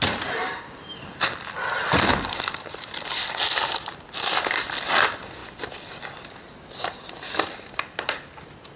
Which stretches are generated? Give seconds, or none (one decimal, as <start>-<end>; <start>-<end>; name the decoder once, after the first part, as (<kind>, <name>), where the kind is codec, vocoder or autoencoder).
5.4-5.9 (vocoder, BigVGAN v2)